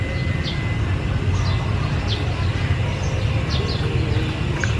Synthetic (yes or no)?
no